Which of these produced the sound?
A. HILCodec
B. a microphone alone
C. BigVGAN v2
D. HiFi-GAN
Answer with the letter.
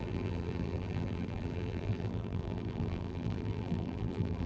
C